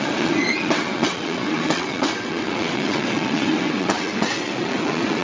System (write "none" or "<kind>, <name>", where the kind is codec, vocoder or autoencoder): vocoder, WaveNeXt